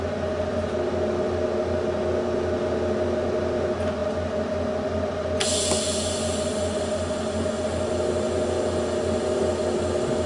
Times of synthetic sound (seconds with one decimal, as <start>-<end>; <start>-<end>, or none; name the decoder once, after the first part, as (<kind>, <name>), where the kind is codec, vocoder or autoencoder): none